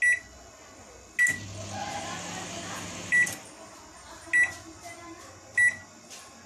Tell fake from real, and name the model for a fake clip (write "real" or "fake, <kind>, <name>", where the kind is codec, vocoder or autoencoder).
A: real